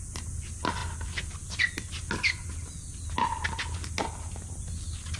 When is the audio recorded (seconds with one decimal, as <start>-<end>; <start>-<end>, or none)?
0.0-5.2